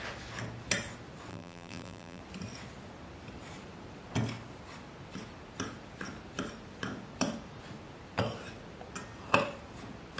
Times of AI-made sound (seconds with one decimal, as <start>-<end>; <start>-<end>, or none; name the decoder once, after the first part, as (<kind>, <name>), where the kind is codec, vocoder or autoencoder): 1.3-2.2 (vocoder, BigVGAN v2)